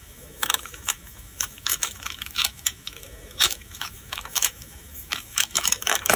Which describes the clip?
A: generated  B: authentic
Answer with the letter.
A